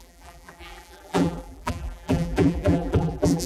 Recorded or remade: remade